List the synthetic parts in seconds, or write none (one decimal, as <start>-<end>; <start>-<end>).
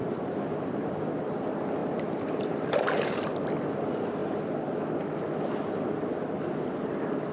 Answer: 0.0-0.9; 1.8-3.5